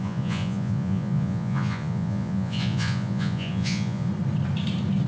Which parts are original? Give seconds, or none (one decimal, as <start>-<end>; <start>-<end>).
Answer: 4.1-5.1